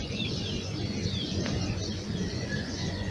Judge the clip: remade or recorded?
remade